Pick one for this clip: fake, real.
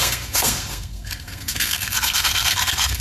fake